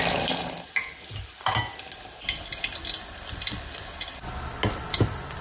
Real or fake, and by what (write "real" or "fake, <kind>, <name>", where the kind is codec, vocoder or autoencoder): real